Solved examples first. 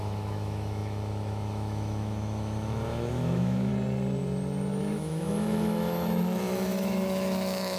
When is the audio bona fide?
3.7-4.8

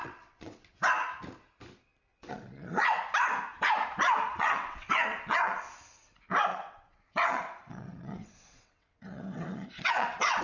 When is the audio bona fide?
0.9-2.1; 3.0-4.3; 5.6-6.5